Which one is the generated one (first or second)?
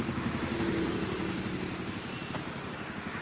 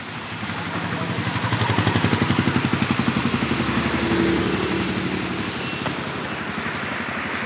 first